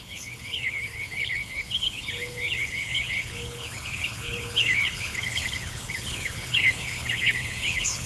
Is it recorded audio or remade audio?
remade